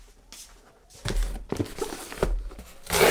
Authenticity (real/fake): real